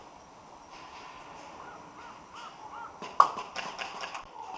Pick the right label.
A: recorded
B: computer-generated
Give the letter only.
A